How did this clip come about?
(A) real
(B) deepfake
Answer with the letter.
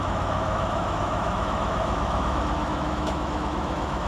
B